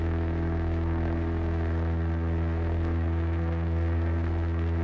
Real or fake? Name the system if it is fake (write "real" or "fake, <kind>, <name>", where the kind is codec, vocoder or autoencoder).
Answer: fake, codec, SNAC